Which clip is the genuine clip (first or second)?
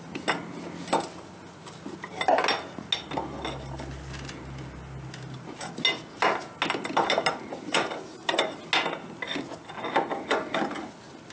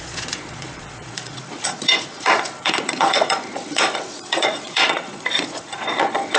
first